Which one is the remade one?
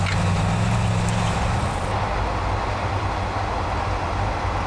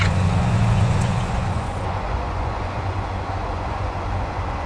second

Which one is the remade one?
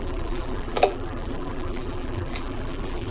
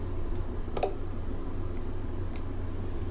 first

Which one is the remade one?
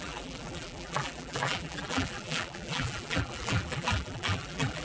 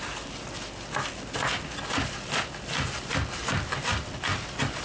first